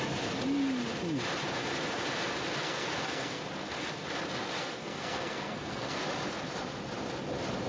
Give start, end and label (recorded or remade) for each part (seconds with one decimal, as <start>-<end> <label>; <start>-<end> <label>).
0.0-2.6 recorded; 2.6-3.4 remade; 3.4-4.6 recorded; 4.6-6.0 remade; 6.0-7.7 recorded